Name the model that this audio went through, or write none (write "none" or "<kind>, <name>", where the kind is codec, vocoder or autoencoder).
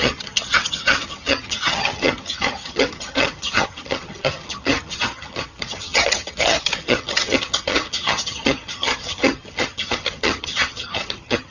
vocoder, HiFi-GAN